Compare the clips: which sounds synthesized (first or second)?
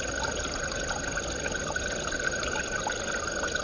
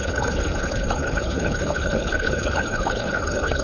second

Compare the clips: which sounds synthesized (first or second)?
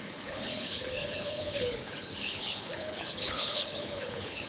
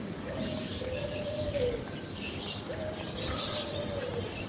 first